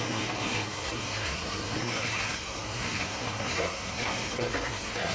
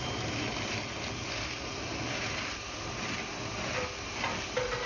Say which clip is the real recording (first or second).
second